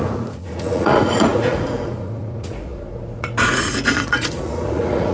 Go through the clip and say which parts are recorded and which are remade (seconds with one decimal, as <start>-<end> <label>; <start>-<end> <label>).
0.0-5.1 remade